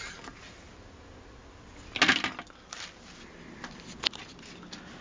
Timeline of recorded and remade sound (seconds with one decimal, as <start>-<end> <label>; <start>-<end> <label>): 0.0-5.0 recorded